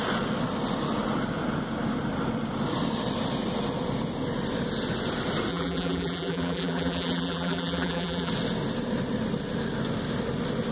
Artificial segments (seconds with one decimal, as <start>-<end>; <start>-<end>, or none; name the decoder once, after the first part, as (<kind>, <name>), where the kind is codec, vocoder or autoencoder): 5.5-8.3 (vocoder, BigVGAN v2)